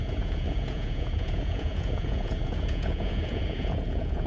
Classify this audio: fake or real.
fake